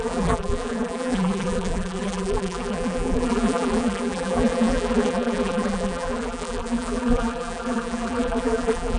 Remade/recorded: remade